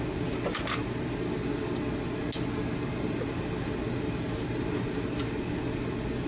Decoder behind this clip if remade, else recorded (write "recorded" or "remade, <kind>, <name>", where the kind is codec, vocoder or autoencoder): recorded